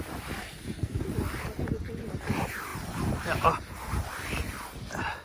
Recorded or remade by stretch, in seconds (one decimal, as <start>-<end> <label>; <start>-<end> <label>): 0.0-0.4 recorded; 0.4-1.0 remade; 1.0-5.2 recorded